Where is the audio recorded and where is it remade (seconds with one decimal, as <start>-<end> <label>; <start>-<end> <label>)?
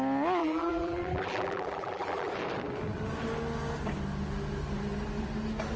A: 0.0-0.4 recorded; 0.4-2.3 remade; 2.3-5.8 recorded